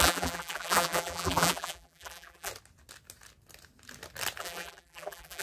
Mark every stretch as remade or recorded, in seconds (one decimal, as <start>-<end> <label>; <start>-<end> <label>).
0.0-2.5 remade; 2.5-4.4 recorded; 4.4-5.4 remade